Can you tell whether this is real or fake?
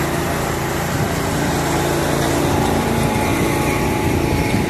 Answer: fake